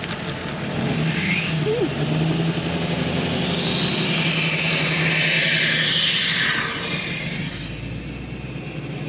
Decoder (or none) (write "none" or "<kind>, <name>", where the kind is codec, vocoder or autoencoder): none